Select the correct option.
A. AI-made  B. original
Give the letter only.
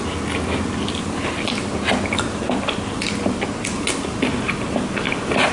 B